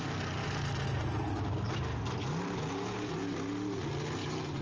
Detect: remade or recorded recorded